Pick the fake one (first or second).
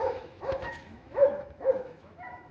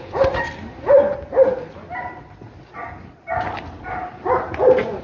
first